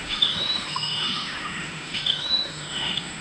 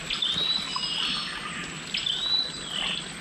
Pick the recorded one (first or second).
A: second